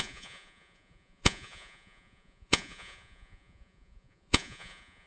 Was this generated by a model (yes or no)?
yes